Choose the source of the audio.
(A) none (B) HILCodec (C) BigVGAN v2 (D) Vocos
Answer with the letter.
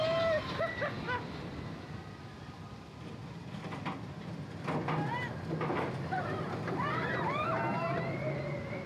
A